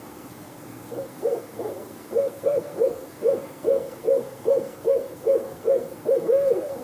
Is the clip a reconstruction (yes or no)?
yes